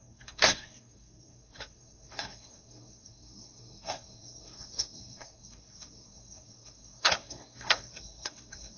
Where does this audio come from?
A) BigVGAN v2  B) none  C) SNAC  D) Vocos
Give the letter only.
C